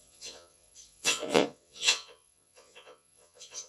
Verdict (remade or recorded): remade